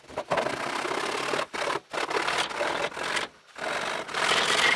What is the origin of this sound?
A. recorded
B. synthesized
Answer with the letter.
B